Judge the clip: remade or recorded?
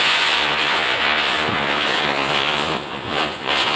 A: remade